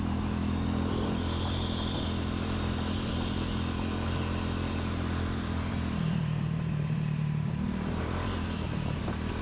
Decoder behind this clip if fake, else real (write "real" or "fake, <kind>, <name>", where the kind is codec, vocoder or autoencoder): fake, vocoder, BigVGAN v2